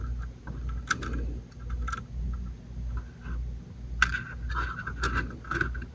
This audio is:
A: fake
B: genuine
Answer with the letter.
B